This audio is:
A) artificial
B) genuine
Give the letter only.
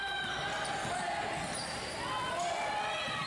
B